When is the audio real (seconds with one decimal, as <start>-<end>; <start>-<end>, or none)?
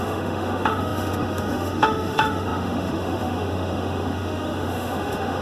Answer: none